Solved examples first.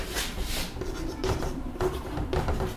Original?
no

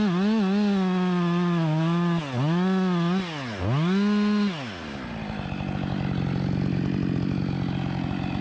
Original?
yes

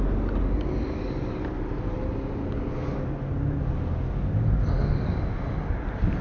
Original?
yes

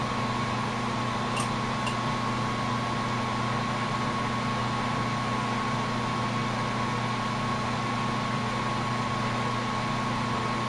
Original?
yes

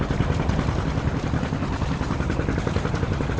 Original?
yes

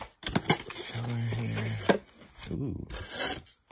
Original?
yes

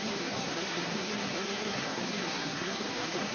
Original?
no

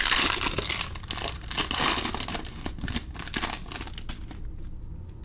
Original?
yes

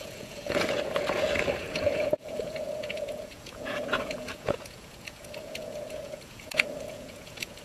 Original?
no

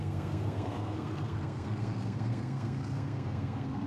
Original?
no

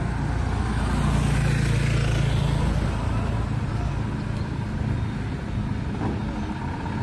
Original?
yes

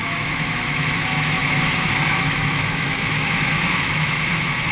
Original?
no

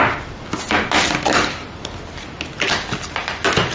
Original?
yes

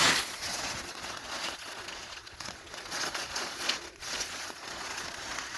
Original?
no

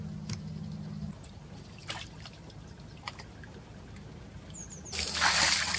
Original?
yes